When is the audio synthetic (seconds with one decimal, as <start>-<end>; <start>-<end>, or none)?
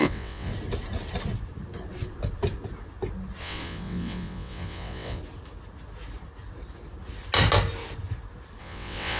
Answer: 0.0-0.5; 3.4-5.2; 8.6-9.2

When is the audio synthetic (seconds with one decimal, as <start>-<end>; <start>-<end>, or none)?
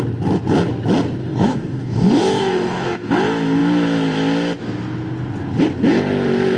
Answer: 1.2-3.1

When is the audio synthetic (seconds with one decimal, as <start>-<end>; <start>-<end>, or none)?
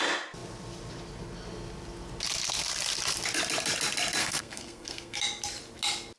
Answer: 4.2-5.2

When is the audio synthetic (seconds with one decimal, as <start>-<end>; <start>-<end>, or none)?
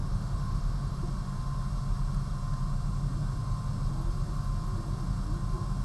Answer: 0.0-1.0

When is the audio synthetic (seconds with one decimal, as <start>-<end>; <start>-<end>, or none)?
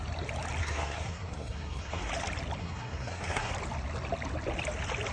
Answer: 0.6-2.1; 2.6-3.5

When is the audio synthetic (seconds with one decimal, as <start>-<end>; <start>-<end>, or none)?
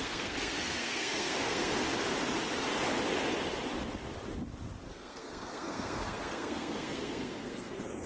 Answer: 0.0-1.8; 4.9-8.1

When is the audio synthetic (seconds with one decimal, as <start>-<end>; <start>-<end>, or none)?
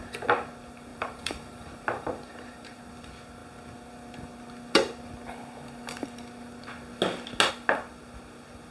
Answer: 0.9-2.8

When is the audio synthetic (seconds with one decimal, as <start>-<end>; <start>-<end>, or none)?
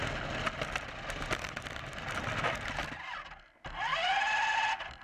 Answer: none